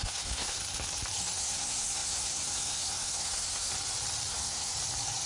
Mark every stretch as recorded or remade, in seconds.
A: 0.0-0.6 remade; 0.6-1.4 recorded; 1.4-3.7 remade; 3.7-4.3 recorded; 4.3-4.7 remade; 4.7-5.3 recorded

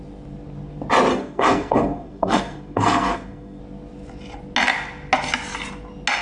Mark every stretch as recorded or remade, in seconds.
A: 0.0-1.1 recorded; 1.1-3.6 remade; 3.6-6.2 recorded